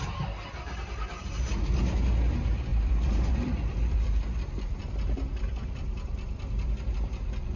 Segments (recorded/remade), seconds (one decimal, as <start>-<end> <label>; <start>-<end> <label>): 0.0-2.7 recorded; 2.7-7.6 remade

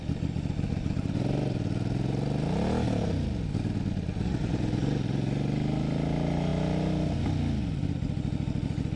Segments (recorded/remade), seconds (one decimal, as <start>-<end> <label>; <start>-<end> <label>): 0.0-9.0 recorded

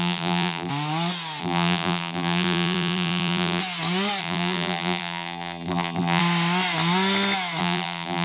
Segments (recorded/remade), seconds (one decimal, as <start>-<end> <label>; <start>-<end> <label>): 0.0-0.7 remade; 0.7-1.4 recorded; 1.4-3.6 remade; 3.6-4.2 recorded; 4.2-6.2 remade; 6.2-7.6 recorded; 7.6-8.2 remade

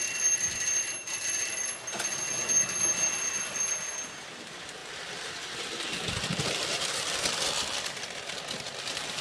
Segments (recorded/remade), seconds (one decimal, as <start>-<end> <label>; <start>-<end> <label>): 0.0-1.5 remade; 1.5-4.2 recorded; 4.2-9.2 remade

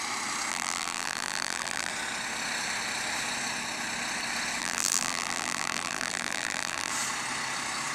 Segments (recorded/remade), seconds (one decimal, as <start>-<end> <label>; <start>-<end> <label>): 0.0-0.5 recorded; 0.5-1.9 remade; 1.9-4.6 recorded; 4.6-6.9 remade; 6.9-7.9 recorded